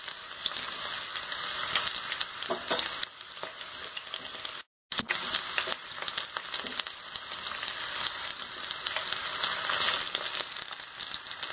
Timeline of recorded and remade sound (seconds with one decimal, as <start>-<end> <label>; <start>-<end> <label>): 0.0-11.5 recorded